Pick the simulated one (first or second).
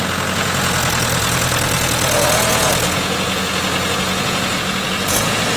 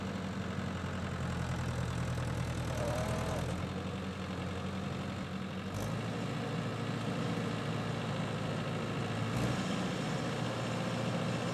first